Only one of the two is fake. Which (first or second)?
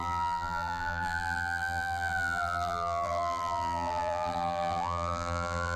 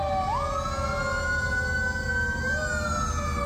first